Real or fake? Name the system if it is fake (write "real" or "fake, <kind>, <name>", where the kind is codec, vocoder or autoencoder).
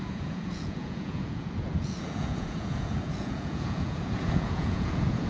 fake, vocoder, Vocos